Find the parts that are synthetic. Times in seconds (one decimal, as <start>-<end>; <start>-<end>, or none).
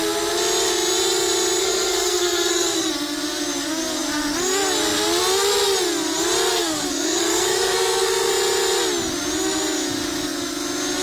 1.6-2.9; 6.5-8.3